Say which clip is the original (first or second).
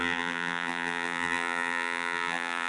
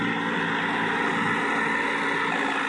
second